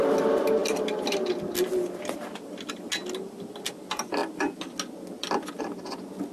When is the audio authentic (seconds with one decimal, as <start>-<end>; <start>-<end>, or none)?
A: 0.0-6.3